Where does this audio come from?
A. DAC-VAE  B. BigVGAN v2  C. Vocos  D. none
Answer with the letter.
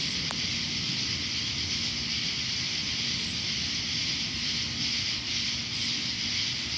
B